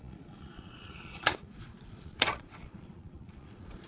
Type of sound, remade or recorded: remade